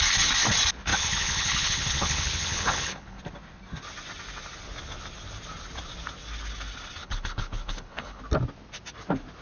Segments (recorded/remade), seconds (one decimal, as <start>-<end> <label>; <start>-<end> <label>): 0.0-0.9 recorded; 0.9-3.2 remade; 3.2-7.0 recorded; 7.0-8.2 remade; 8.2-9.4 recorded